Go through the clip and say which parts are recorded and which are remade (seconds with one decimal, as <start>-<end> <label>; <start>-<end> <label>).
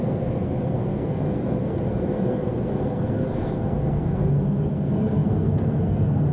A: 0.0-6.3 remade